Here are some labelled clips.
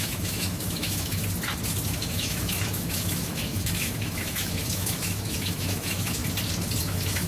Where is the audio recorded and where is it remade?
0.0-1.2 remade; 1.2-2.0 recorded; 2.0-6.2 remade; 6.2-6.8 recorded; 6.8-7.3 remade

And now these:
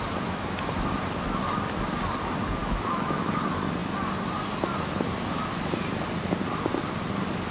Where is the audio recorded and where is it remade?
0.0-2.6 recorded; 2.6-3.3 remade; 3.3-7.5 recorded

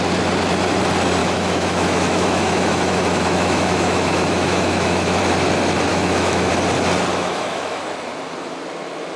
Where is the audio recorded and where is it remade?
0.0-1.2 recorded; 1.2-5.2 remade; 5.2-5.9 recorded; 5.9-6.5 remade; 6.5-7.1 recorded; 7.1-7.8 remade; 7.8-9.2 recorded

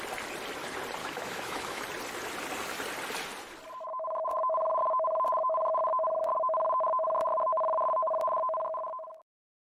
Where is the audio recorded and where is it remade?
0.0-1.0 recorded; 1.0-1.8 remade; 1.8-3.8 recorded; 3.8-5.9 remade; 5.9-9.6 recorded

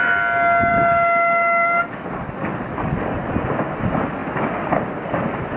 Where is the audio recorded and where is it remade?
0.0-0.7 recorded; 0.7-1.8 remade; 1.8-5.6 recorded